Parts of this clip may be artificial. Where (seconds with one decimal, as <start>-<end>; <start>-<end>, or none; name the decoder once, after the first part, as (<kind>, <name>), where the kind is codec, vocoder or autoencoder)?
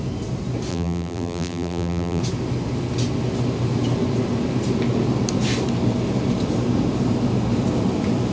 0.7-2.2 (vocoder, BigVGAN v2)